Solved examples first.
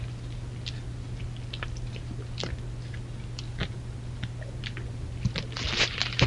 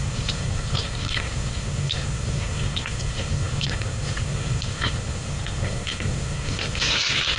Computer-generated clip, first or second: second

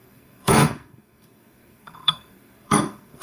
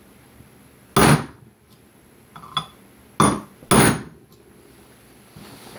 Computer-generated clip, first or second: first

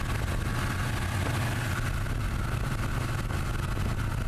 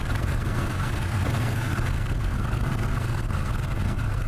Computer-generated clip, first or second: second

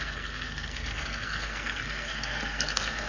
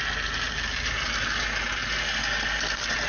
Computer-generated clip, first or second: first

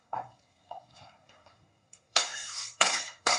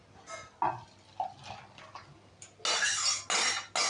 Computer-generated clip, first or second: first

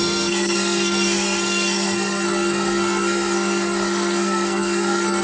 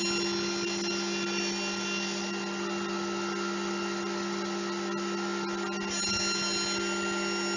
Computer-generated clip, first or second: first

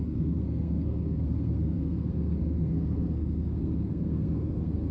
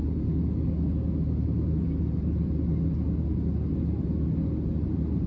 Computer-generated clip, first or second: first